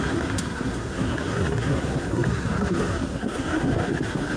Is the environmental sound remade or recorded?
remade